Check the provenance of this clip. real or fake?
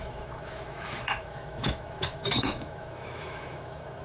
fake